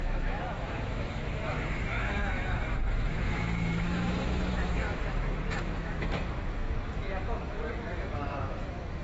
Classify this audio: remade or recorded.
remade